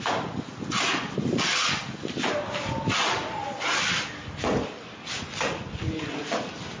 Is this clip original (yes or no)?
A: yes